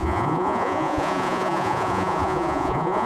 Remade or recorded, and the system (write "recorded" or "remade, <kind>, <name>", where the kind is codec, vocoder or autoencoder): remade, vocoder, Vocos